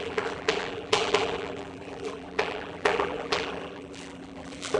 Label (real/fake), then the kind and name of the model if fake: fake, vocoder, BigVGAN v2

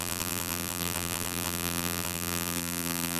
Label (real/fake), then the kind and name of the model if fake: fake, vocoder, BigVGAN v2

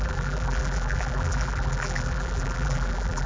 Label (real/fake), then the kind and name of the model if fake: fake, vocoder, BigVGAN v2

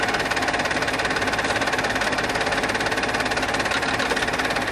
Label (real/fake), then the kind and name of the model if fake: fake, vocoder, BigVGAN v2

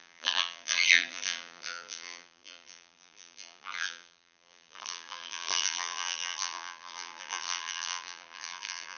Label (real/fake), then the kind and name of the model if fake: fake, vocoder, BigVGAN v2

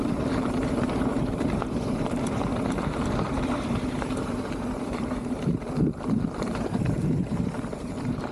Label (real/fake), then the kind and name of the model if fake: fake, vocoder, BigVGAN v2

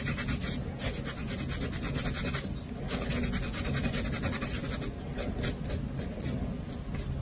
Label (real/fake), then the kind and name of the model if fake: real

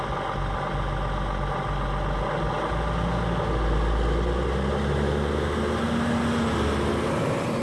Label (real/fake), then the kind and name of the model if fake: real